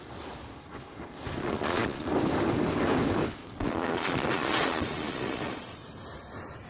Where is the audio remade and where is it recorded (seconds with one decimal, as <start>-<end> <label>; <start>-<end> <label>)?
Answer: 0.0-1.4 recorded; 1.4-2.1 remade; 2.1-3.4 recorded; 3.4-5.9 remade; 5.9-6.7 recorded